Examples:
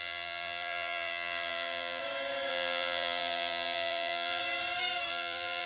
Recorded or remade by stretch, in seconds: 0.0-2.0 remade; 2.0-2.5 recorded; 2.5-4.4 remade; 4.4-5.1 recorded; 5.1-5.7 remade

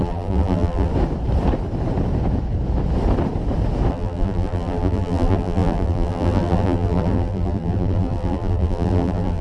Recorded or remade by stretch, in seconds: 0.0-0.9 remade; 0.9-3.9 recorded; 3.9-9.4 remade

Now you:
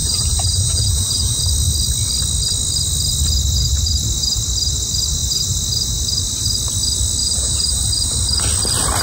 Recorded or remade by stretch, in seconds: 0.0-1.4 remade; 1.4-7.2 recorded; 7.2-7.8 remade; 7.8-9.0 recorded

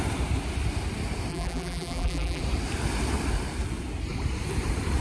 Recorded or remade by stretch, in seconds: 0.0-1.3 recorded; 1.3-2.4 remade; 2.4-5.0 recorded

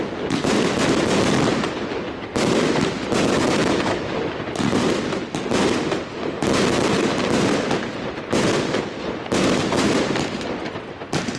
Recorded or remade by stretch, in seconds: 0.0-1.5 remade; 1.5-2.5 recorded; 2.5-3.6 remade; 3.6-7.7 recorded; 7.7-11.4 remade

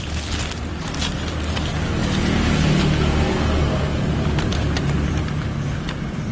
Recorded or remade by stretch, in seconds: 0.0-6.3 recorded

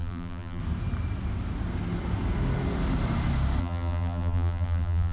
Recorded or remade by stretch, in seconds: 0.0-0.6 remade; 0.6-3.6 recorded; 3.6-5.1 remade

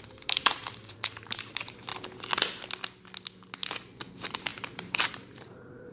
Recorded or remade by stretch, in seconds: 0.0-1.9 remade; 1.9-4.1 recorded; 4.1-5.9 remade